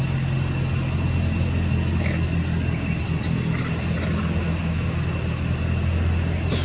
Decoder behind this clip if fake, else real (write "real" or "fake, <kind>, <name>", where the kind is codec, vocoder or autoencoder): real